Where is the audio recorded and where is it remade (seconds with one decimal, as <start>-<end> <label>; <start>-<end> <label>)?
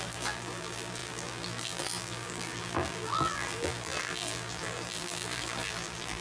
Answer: 0.0-6.2 remade